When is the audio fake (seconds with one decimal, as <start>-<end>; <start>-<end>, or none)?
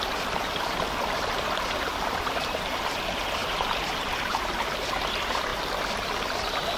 3.4-4.4